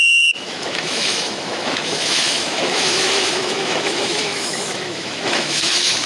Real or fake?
fake